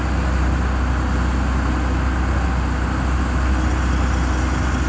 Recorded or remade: recorded